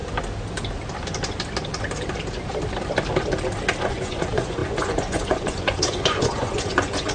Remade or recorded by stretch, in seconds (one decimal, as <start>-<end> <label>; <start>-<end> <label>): 0.0-3.8 recorded; 3.8-7.1 remade